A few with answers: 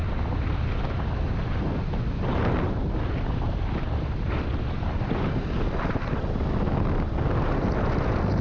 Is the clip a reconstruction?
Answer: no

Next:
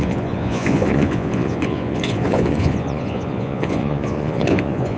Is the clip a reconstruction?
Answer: yes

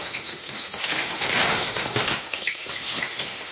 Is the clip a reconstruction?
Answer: yes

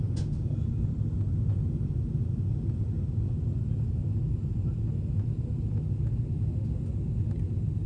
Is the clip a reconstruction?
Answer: no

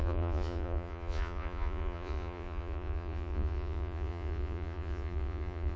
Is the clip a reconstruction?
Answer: yes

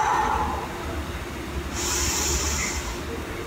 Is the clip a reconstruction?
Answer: no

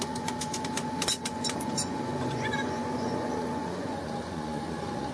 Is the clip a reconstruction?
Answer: yes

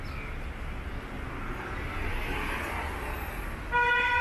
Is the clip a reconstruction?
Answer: no